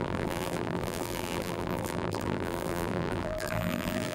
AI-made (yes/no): yes